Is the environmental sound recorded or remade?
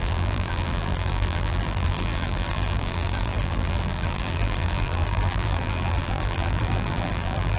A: remade